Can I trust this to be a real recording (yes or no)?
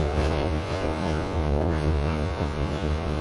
no